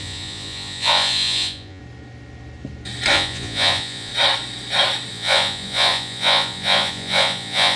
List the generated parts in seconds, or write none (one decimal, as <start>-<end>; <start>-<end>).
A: 0.0-1.8; 3.1-4.1; 5.1-7.8